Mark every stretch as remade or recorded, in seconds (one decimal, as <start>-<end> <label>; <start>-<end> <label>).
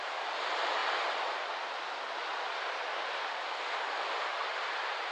0.0-4.4 recorded; 4.4-5.1 remade